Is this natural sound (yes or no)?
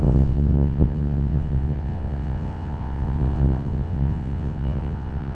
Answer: no